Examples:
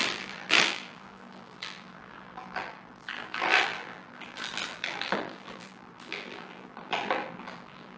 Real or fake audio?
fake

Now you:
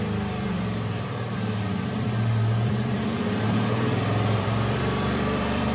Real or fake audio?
fake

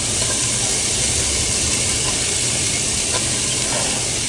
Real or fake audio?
fake